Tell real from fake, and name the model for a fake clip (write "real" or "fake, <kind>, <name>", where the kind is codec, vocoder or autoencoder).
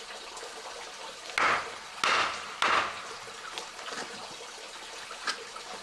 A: real